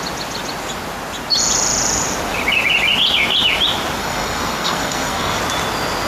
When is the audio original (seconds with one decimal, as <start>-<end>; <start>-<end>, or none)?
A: 0.0-4.0; 5.4-6.1